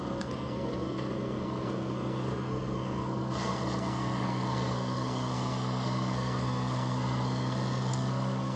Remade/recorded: remade